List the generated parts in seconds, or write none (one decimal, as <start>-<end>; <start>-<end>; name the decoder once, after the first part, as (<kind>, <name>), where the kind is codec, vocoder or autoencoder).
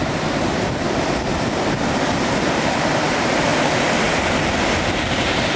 0.0-1.3 (vocoder, BigVGAN v2); 2.2-3.5; 4.8-5.6